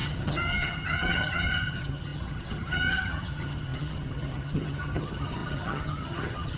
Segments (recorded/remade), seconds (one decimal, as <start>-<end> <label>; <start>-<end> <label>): 0.0-6.6 remade